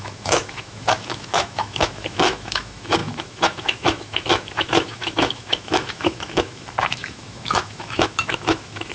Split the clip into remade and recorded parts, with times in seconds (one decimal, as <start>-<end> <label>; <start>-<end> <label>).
0.0-8.9 remade